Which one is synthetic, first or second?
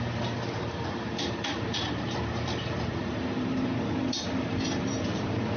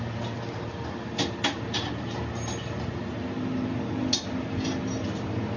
first